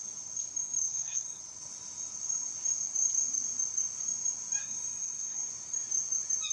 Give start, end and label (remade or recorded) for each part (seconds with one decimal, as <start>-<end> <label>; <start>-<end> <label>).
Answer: 0.0-0.9 recorded; 0.9-1.4 remade; 1.4-4.6 recorded; 4.6-5.5 remade; 5.5-6.5 recorded